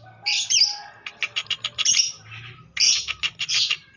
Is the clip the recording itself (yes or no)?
yes